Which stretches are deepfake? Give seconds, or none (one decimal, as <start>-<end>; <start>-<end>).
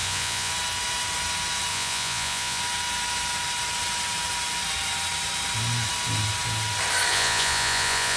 0.0-0.5; 1.7-2.6; 7.1-8.2